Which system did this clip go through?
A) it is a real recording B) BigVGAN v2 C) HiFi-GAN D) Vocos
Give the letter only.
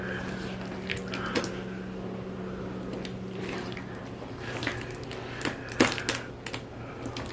A